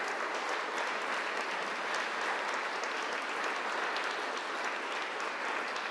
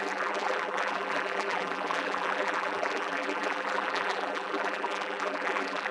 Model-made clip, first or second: second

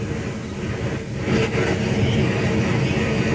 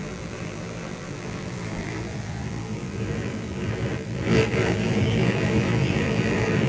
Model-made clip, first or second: second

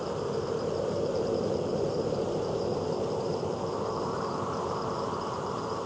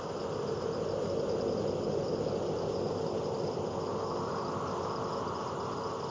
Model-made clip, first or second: first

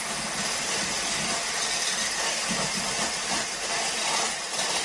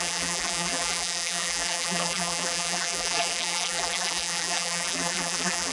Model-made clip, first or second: second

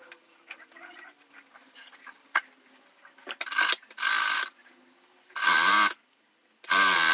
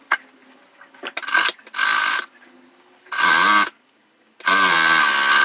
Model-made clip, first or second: first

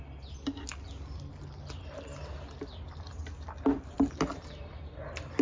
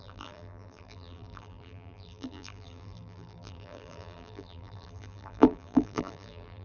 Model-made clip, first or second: second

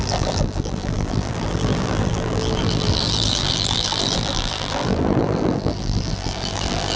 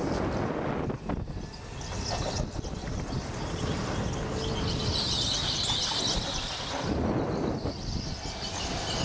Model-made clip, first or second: first